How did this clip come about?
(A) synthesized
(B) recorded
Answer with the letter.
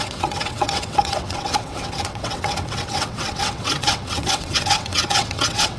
A